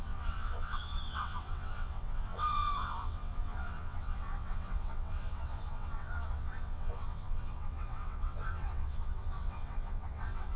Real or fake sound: fake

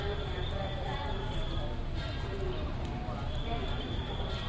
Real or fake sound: real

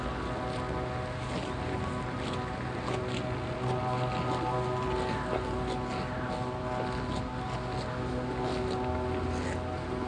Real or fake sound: real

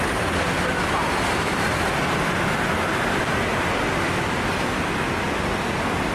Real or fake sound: real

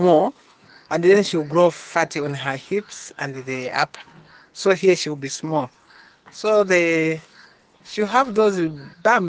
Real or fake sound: fake